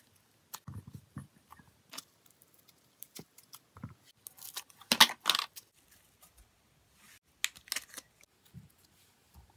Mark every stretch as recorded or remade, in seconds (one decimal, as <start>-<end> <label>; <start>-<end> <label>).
0.0-9.6 recorded